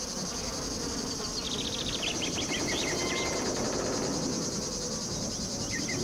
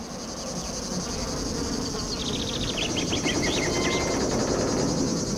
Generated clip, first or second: first